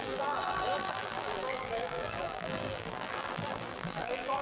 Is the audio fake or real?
fake